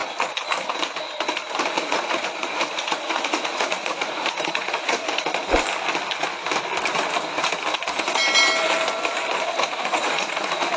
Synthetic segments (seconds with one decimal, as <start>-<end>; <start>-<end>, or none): 1.8-5.0; 9.4-10.8

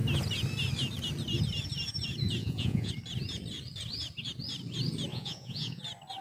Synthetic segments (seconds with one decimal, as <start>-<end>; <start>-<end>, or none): 2.4-2.9; 5.1-5.8

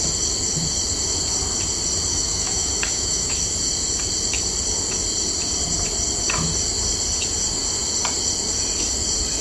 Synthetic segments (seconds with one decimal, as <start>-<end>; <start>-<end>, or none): 2.1-3.3

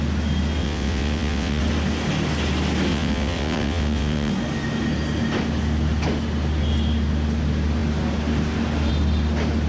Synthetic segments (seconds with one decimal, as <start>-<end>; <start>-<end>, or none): 0.6-1.6; 2.9-4.3